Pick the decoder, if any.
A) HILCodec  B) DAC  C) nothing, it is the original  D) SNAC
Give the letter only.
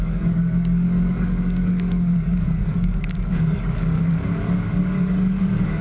B